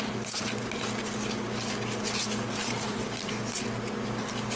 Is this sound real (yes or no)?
yes